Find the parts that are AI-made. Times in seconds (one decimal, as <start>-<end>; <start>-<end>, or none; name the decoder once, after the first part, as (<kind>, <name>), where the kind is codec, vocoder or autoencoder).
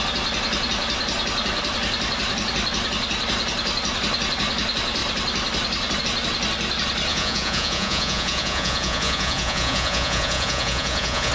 7.1-11.3 (vocoder, Vocos)